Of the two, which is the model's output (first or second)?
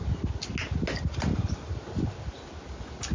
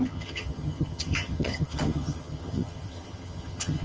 second